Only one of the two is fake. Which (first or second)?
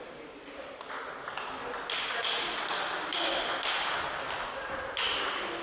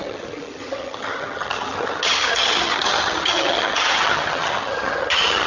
second